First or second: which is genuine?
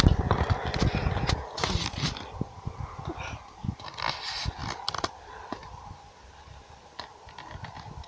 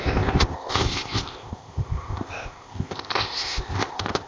first